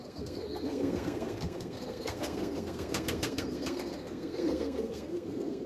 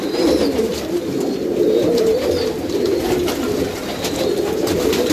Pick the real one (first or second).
second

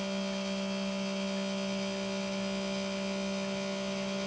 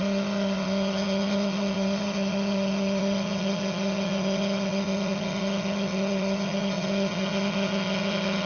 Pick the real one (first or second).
first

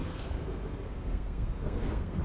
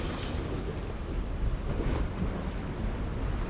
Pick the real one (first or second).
second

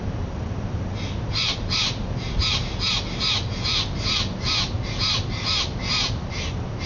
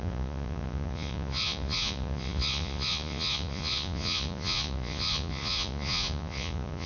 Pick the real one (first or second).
first